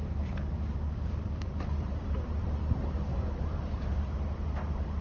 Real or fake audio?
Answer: fake